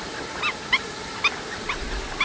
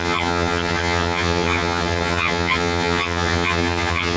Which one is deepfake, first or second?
second